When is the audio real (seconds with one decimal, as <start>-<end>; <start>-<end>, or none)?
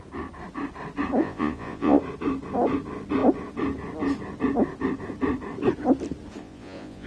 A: 0.0-1.2; 2.0-6.4